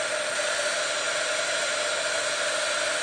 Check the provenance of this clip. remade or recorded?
recorded